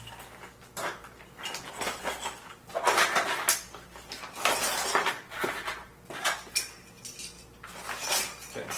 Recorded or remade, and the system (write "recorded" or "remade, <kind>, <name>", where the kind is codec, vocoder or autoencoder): recorded